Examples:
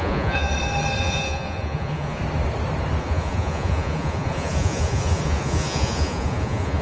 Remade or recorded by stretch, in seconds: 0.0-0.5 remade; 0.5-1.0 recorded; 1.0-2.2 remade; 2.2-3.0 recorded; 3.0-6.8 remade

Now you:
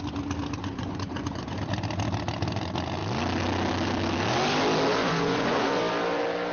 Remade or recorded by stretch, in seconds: 0.0-0.6 recorded; 0.6-1.6 remade; 1.6-5.0 recorded; 5.0-5.8 remade; 5.8-6.5 recorded

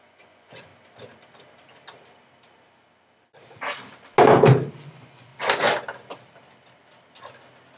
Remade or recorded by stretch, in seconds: 0.0-0.7 remade; 0.7-4.8 recorded; 4.8-5.3 remade; 5.3-7.8 recorded

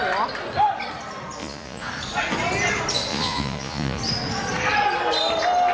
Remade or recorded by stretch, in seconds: 0.0-1.4 recorded; 1.4-1.9 remade; 1.9-3.1 recorded; 3.1-4.0 remade; 4.0-5.7 recorded

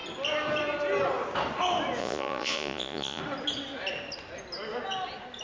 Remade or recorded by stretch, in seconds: 0.0-2.0 recorded; 2.0-3.2 remade; 3.2-5.4 recorded

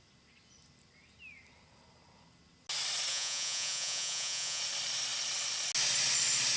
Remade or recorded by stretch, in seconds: 0.0-3.1 recorded; 3.1-4.6 remade; 4.6-6.6 recorded

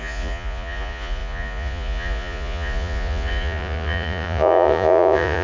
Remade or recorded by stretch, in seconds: 0.0-5.4 remade

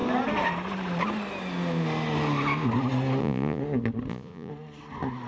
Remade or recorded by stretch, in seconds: 0.0-3.2 recorded; 3.2-3.6 remade; 3.6-4.1 recorded; 4.1-4.5 remade; 4.5-5.3 recorded